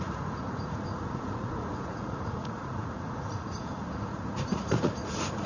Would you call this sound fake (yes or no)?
yes